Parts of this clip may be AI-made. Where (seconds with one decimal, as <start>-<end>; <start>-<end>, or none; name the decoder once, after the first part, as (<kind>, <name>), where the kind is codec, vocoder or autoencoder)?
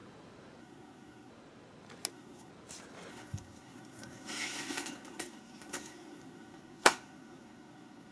0.6-1.3 (codec, SNAC); 2.1-2.5; 3.1-8.1